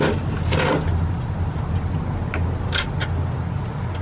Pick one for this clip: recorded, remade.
recorded